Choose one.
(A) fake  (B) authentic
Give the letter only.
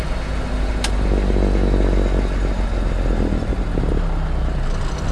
B